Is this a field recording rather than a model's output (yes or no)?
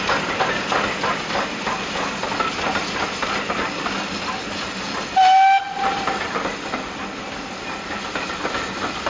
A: yes